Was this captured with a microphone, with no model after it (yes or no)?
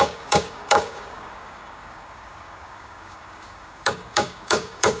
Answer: no